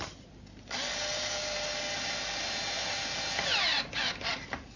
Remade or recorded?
recorded